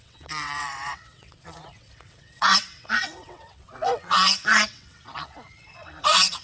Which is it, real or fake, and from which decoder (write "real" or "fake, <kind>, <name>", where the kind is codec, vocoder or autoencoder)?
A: fake, vocoder, WaveNeXt